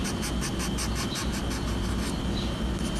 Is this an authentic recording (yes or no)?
yes